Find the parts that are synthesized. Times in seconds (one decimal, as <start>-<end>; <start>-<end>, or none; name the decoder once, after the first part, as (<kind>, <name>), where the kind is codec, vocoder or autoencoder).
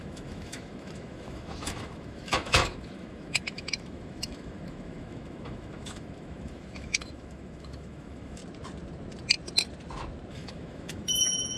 0.0-8.4 (autoencoder, DAC-VAE); 10.3-11.6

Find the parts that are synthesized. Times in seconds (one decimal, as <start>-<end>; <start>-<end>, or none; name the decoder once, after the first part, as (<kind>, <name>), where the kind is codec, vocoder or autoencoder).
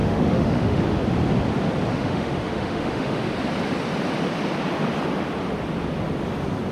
0.0-0.8 (autoencoder, DAC-VAE); 1.9-3.2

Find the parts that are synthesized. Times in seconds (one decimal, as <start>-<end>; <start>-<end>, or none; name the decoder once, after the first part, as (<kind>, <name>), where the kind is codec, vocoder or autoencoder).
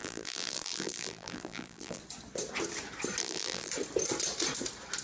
0.0-2.0 (vocoder, BigVGAN v2); 3.2-3.7